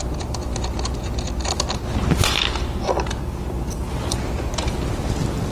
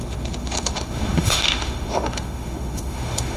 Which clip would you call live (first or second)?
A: first